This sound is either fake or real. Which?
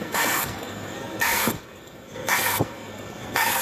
fake